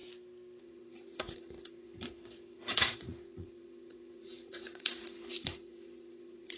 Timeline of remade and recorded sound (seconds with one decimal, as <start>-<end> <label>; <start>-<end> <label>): 0.0-0.6 recorded; 0.6-6.6 remade